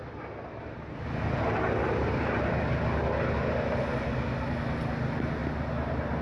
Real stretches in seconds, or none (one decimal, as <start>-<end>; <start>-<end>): 0.0-6.2